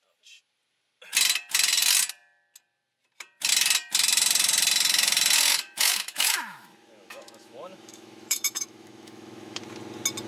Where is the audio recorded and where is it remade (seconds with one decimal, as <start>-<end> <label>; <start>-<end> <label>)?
0.0-5.5 recorded; 5.5-9.6 remade; 9.6-10.3 recorded